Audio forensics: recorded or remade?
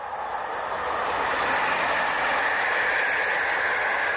recorded